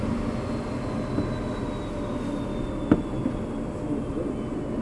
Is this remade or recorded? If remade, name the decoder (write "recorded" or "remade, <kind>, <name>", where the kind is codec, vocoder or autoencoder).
recorded